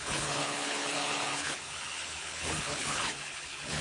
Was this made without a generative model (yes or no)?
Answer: no